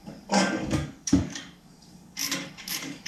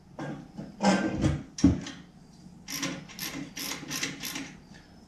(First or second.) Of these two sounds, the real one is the second